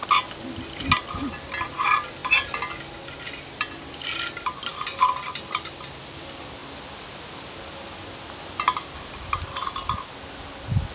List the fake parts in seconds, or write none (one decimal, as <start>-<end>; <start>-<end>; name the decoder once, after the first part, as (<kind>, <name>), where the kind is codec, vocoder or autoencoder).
none